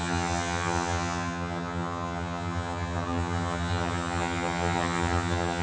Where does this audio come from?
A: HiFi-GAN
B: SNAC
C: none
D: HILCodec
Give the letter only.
A